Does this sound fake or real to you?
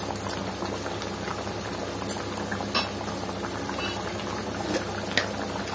real